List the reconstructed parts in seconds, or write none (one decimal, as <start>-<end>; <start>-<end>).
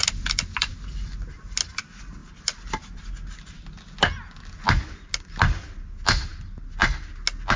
0.0-0.7